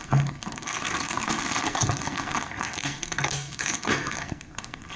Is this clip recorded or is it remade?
remade